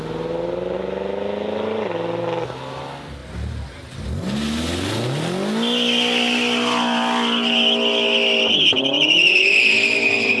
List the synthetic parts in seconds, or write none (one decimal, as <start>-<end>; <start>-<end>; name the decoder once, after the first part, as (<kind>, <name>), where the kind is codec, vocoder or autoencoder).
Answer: none